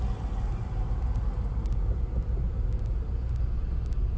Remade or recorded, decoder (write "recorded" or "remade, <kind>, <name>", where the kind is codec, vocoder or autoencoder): recorded